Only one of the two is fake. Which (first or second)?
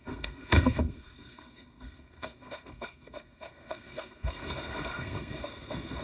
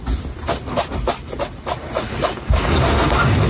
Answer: first